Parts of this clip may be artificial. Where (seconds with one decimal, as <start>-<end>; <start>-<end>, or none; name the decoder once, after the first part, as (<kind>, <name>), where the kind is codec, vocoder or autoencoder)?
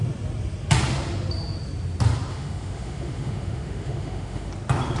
2.3-4.5 (autoencoder, DAC-VAE)